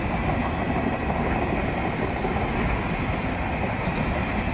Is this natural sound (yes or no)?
yes